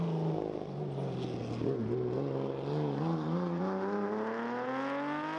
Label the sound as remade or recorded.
recorded